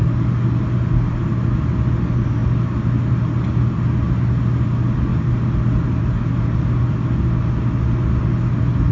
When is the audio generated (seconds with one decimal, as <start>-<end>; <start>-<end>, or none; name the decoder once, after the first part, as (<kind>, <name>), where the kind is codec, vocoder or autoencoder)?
none